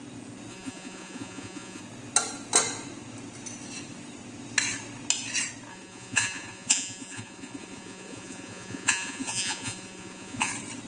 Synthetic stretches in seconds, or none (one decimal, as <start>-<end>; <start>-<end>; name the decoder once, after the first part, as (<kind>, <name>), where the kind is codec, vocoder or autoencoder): 0.5-1.8 (vocoder, Vocos); 5.7-10.5